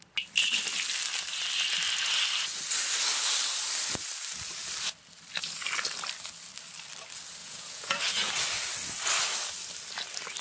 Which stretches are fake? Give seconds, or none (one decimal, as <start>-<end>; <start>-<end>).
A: 7.4-8.3

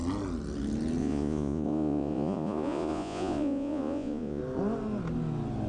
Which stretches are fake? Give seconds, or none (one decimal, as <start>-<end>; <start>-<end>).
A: 1.0-4.4

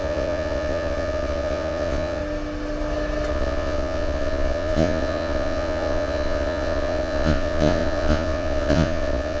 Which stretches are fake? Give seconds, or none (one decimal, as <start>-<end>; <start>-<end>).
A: 0.0-2.2; 3.3-9.4

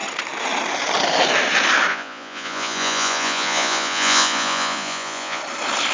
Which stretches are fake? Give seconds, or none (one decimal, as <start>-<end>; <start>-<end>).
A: 1.9-5.4

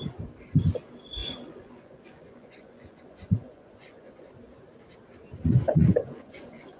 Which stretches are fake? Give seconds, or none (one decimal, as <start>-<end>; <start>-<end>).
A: 1.2-4.3; 5.4-6.8